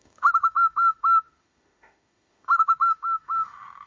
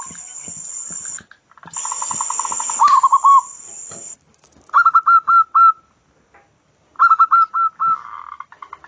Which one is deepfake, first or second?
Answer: first